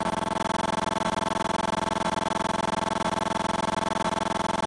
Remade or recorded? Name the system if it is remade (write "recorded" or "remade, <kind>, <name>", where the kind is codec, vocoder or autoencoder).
recorded